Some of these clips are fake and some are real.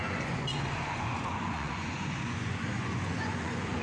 fake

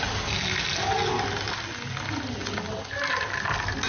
real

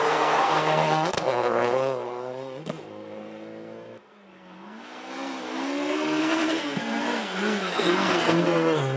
fake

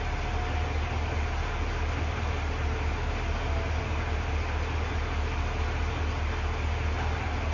real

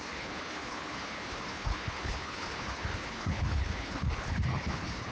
fake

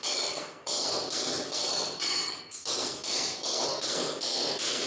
fake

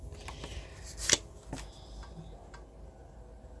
real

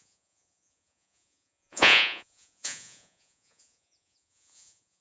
fake